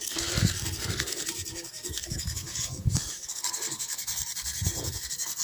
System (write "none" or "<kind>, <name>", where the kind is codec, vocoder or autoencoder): codec, SNAC